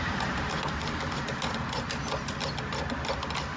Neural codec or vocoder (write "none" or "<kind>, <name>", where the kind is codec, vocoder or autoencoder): none